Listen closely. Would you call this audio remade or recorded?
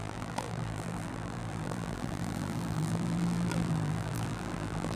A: remade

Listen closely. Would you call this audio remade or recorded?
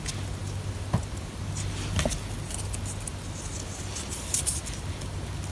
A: recorded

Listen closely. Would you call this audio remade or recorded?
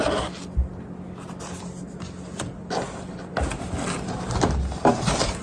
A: recorded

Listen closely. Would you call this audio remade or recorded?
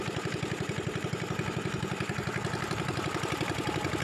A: remade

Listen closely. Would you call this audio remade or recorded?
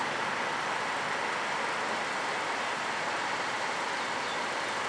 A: recorded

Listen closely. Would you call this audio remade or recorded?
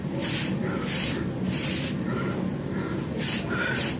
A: recorded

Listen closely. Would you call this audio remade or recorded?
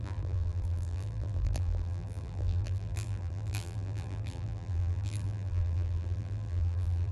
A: remade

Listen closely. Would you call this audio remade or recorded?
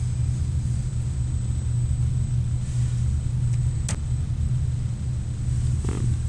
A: recorded